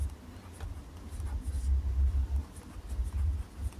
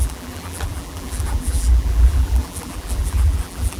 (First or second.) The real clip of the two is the first